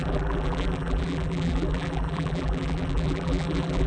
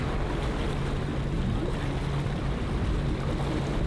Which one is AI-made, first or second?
first